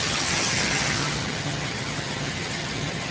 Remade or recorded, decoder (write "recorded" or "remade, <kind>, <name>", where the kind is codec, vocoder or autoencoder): remade, vocoder, HiFi-GAN